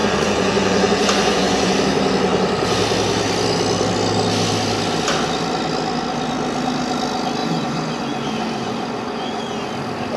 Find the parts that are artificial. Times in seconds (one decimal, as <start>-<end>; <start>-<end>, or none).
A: 0.0-1.7; 7.4-9.7